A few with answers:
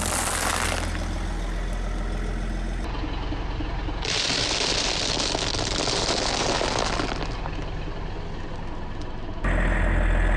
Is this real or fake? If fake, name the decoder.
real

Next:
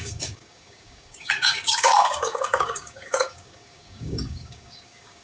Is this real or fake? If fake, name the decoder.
fake, codec, DAC